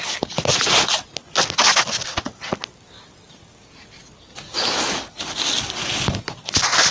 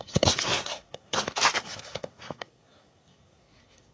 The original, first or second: first